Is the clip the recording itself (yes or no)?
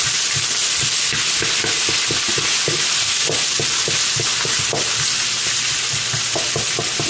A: yes